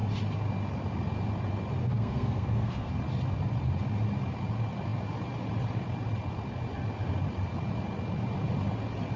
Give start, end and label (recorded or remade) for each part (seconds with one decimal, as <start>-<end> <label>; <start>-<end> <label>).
0.0-1.8 recorded; 1.8-2.9 remade; 2.9-9.2 recorded